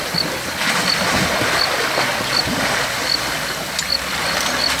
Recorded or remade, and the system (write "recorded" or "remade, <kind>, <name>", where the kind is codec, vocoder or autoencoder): recorded